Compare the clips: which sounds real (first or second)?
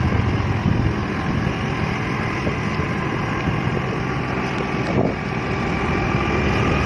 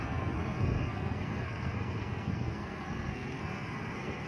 first